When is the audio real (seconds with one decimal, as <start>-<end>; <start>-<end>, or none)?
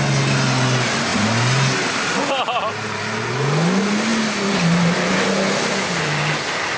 0.0-6.8